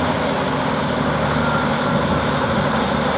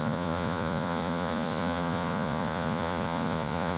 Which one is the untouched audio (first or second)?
first